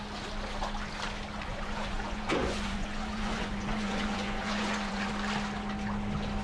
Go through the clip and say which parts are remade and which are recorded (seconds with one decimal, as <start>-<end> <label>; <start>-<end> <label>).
0.0-1.5 recorded; 1.5-5.1 remade; 5.1-6.4 recorded